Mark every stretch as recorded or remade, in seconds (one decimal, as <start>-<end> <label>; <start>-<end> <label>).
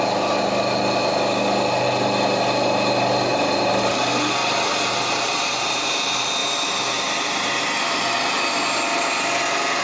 0.0-3.3 recorded; 3.3-4.0 remade; 4.0-4.4 recorded; 4.4-5.9 remade; 5.9-6.4 recorded; 6.4-8.0 remade; 8.0-9.8 recorded